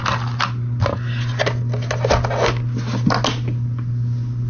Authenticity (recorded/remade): recorded